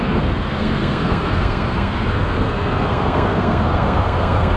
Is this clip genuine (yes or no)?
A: no